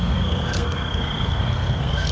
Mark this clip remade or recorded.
remade